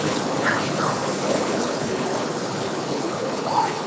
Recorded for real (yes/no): no